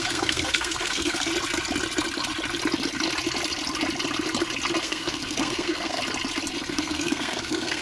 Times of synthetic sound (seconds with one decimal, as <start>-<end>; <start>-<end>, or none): 0.0-1.3; 4.8-6.0; 6.7-7.8